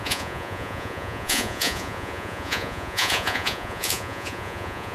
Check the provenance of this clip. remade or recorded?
remade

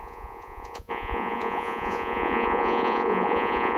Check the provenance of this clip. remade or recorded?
remade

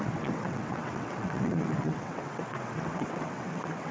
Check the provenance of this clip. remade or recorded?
remade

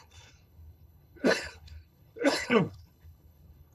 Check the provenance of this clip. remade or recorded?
remade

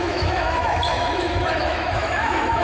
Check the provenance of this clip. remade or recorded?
remade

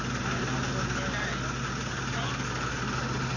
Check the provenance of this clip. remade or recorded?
recorded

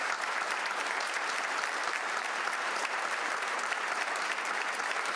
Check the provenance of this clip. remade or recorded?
remade